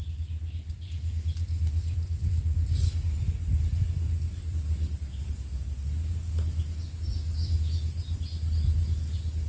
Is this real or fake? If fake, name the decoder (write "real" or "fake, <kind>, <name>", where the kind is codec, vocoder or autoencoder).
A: real